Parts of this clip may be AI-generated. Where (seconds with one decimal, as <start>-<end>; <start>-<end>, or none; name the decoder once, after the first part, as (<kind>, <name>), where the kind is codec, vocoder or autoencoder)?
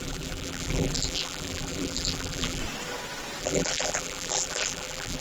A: 0.0-2.6 (vocoder, BigVGAN v2); 3.4-5.2